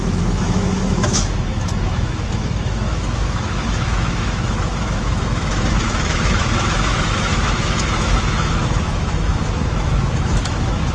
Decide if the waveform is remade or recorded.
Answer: remade